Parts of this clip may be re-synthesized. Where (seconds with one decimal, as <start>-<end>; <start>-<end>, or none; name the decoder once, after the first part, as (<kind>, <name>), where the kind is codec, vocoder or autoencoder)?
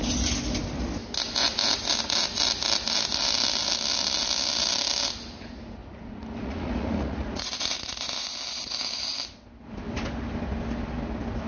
5.8-7.5 (vocoder, Vocos)